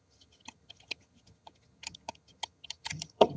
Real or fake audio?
fake